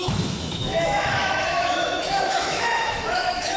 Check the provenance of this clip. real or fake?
fake